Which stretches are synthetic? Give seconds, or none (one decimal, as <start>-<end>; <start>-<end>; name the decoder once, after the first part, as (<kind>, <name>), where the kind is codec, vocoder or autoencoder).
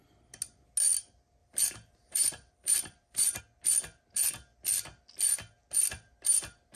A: 1.4-3.4 (vocoder, BigVGAN v2)